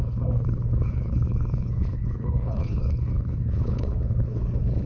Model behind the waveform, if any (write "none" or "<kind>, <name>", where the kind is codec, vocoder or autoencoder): codec, HILCodec